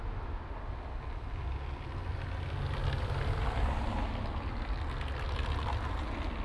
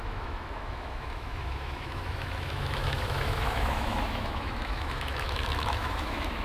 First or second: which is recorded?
first